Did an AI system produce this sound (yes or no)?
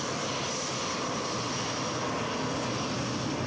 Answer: no